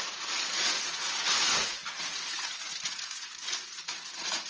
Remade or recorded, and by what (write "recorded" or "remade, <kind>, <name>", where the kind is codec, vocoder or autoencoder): remade, vocoder, Vocos